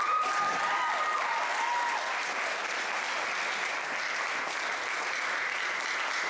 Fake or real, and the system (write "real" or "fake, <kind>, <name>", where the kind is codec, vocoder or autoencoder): real